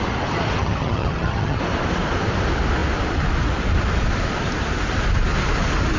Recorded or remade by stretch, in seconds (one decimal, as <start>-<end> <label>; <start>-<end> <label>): 0.0-0.6 recorded; 0.6-1.6 remade; 1.6-6.0 recorded